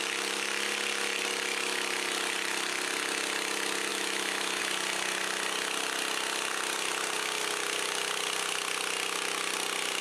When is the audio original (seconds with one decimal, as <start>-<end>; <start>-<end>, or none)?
0.0-3.9; 4.6-10.0